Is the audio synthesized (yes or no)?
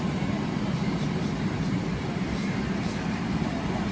yes